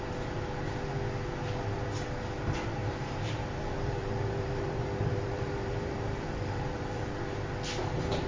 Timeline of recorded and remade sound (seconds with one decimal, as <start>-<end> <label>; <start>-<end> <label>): 0.0-2.8 recorded; 2.8-7.1 remade; 7.1-8.3 recorded